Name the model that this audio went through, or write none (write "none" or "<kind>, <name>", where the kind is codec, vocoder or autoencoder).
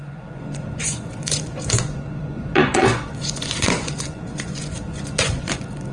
vocoder, Vocos